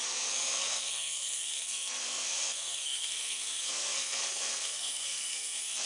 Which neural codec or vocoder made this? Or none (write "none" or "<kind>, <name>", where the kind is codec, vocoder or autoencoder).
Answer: codec, SNAC